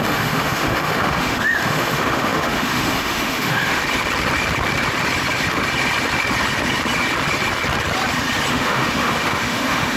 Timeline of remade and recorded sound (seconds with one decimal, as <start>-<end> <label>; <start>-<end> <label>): 0.0-3.8 remade; 3.8-8.5 recorded; 8.5-10.0 remade

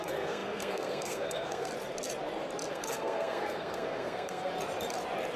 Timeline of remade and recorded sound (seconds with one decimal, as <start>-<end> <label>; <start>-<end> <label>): 0.0-1.7 remade; 1.7-2.7 recorded; 2.7-4.5 remade; 4.5-5.4 recorded